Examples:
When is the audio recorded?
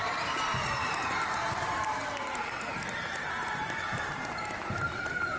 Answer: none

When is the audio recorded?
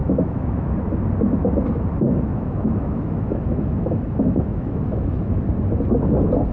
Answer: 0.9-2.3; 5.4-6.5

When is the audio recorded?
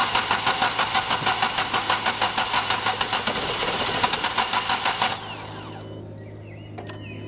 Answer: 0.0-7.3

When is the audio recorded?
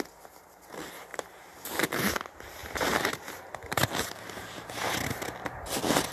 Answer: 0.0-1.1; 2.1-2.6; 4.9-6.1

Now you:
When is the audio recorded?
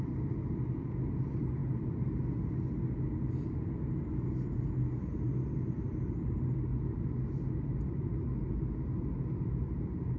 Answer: 0.0-10.2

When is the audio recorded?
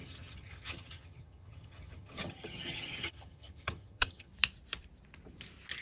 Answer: 4.3-5.8